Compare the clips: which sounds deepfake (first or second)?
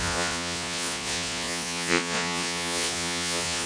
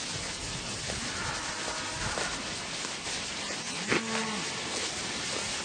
first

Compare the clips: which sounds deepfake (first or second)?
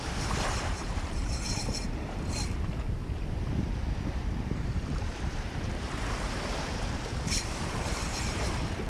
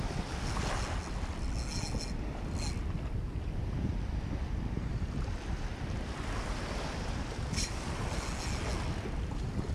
first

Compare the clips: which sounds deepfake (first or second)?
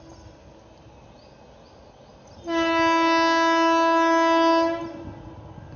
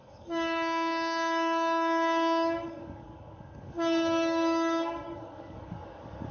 second